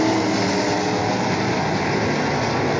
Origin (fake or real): real